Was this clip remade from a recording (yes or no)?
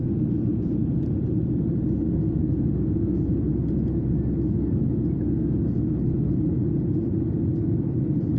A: no